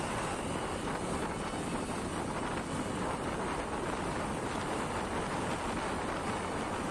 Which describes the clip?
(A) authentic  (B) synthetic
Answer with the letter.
A